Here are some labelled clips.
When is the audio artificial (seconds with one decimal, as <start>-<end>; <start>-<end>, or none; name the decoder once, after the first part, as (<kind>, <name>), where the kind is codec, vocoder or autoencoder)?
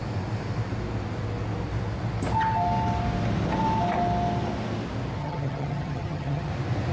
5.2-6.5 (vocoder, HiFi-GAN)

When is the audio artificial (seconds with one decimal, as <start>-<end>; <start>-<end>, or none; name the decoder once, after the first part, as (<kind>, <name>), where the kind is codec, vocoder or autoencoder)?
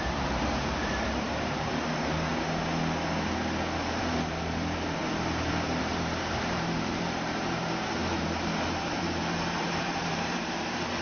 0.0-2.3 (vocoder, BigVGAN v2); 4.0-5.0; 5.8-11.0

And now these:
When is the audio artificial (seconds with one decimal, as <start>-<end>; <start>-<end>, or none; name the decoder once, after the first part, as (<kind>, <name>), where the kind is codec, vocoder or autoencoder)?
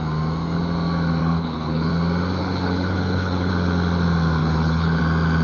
1.2-1.9 (codec, HILCodec); 2.4-3.5; 4.4-5.0